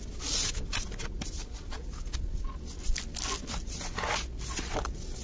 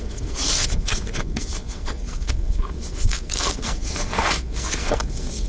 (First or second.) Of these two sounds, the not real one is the second